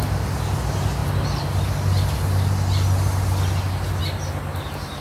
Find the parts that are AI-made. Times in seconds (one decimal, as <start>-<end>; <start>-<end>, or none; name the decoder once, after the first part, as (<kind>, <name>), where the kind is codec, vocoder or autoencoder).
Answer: none